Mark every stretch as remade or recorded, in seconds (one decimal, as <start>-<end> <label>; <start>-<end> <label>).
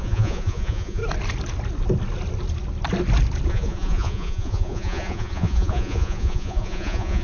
0.0-1.0 remade; 1.0-3.5 recorded; 3.5-7.2 remade